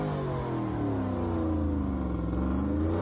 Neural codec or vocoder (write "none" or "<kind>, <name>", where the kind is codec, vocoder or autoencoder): none